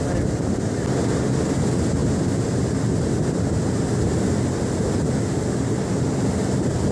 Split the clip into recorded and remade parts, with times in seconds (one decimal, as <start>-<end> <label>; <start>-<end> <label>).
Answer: 0.0-6.9 recorded